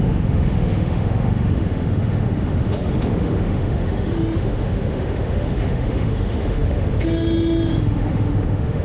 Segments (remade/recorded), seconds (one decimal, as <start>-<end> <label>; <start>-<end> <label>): 0.0-8.8 remade